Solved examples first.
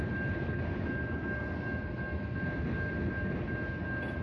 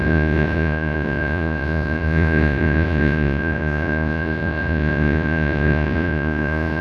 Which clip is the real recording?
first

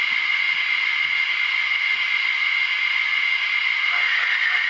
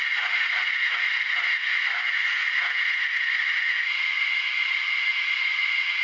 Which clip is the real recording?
first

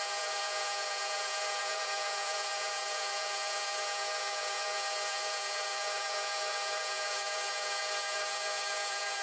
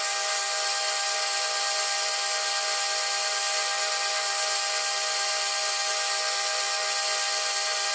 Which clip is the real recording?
second